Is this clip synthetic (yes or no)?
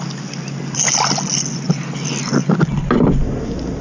no